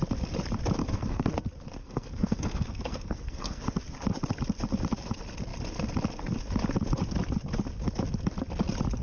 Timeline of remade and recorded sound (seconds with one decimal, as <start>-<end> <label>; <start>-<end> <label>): 0.0-0.8 recorded; 0.8-1.3 remade; 1.3-1.8 recorded; 1.8-3.6 remade; 3.6-9.0 recorded

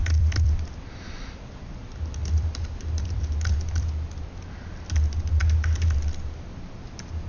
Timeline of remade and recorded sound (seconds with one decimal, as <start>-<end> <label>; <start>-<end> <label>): 0.0-1.6 remade; 1.6-2.2 recorded; 2.2-3.2 remade; 3.2-7.3 recorded

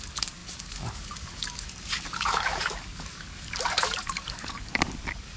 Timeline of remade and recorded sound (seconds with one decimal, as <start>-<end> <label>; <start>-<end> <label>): 0.0-5.4 remade